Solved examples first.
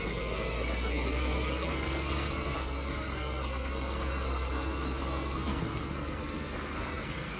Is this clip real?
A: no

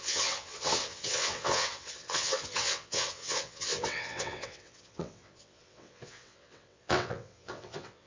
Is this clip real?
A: no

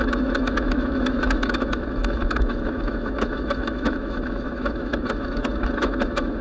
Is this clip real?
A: no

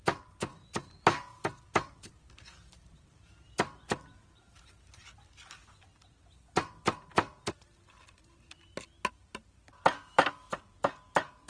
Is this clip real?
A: yes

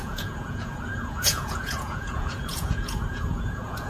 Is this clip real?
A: no